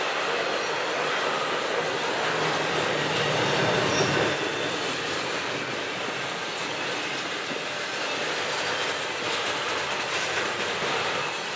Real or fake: real